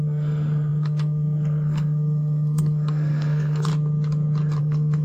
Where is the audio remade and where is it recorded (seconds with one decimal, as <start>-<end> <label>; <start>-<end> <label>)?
0.0-3.7 remade; 3.7-4.6 recorded; 4.6-5.0 remade